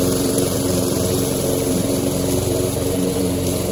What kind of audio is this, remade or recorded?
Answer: remade